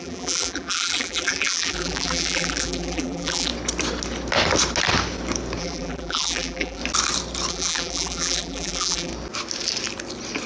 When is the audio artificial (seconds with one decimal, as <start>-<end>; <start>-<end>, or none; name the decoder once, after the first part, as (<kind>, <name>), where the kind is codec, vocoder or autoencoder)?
0.0-3.5 (vocoder, BigVGAN v2); 5.6-6.8; 7.5-9.1